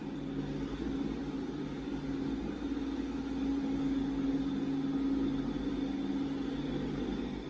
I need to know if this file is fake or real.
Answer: real